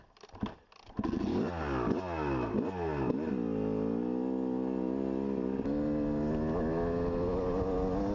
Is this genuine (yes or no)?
yes